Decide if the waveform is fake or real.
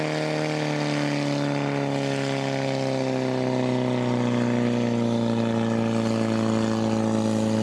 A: real